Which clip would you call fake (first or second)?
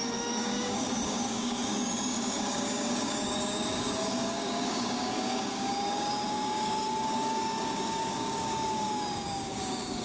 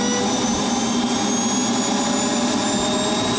first